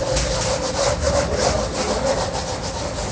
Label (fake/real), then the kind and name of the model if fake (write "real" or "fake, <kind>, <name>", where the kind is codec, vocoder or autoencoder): real